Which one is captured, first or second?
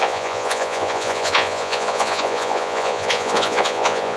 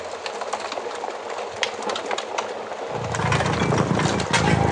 second